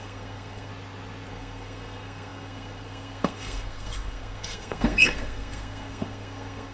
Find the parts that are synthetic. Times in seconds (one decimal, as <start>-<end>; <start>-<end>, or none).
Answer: 0.0-0.7; 1.3-6.7